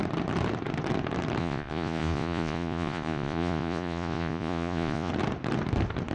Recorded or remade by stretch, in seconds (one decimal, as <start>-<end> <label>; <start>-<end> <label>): 0.0-1.4 recorded; 1.4-5.1 remade; 5.1-6.1 recorded

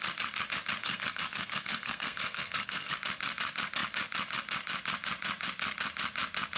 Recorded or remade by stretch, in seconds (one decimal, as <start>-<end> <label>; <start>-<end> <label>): 0.0-0.8 recorded; 0.8-2.9 remade; 2.9-6.6 recorded

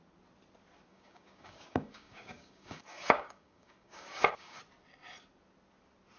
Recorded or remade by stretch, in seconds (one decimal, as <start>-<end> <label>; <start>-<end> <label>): 0.0-0.9 recorded; 0.9-4.6 remade; 4.6-6.2 recorded

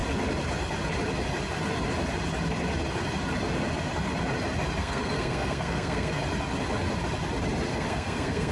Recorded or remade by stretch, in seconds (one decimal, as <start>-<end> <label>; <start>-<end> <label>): 0.0-4.8 recorded; 4.8-6.2 remade; 6.2-7.7 recorded; 7.7-8.5 remade

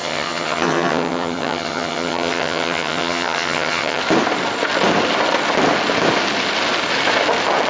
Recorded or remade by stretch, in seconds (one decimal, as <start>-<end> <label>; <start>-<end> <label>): 0.0-4.0 remade; 4.0-7.7 recorded